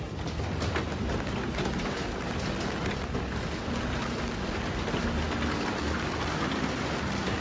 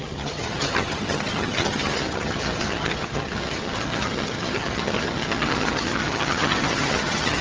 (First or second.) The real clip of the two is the first